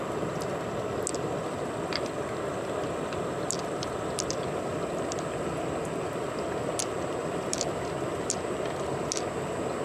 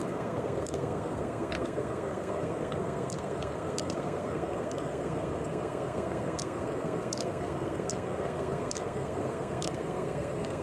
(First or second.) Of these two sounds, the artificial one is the second